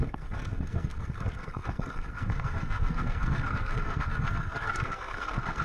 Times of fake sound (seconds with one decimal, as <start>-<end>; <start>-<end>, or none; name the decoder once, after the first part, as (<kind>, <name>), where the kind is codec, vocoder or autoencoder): 0.0-5.6 (codec, SNAC)